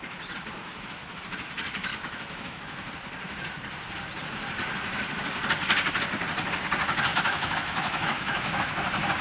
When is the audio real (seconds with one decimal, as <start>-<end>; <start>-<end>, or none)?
0.0-0.6; 1.2-1.9; 2.6-7.1; 8.7-9.2